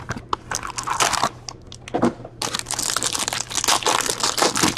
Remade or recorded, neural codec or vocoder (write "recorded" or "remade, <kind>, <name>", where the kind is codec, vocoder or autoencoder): recorded